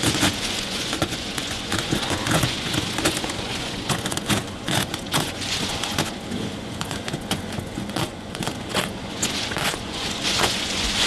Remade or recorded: remade